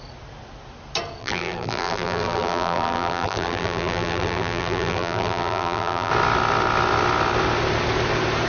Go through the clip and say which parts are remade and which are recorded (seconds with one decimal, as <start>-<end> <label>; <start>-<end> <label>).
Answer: 0.0-1.2 recorded; 1.2-6.1 remade; 6.1-8.5 recorded